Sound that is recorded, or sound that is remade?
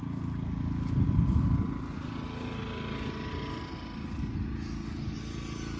recorded